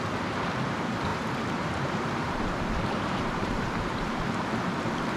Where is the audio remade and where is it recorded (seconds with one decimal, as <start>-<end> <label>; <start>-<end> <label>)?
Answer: 0.0-1.1 recorded; 1.1-4.2 remade; 4.2-5.2 recorded

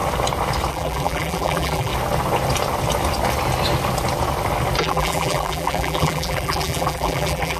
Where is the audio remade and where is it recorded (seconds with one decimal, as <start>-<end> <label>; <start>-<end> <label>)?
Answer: 0.0-0.7 recorded; 0.7-1.9 remade; 1.9-4.8 recorded; 4.8-7.6 remade